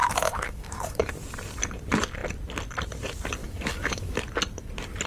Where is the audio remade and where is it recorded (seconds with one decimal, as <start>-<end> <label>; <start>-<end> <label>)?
0.0-1.1 remade; 1.1-3.4 recorded; 3.4-4.2 remade; 4.2-5.1 recorded